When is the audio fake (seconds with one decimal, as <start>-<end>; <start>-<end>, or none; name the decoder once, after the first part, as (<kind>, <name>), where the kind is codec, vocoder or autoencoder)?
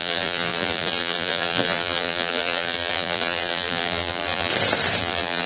0.0-4.5 (vocoder, BigVGAN v2); 5.0-5.5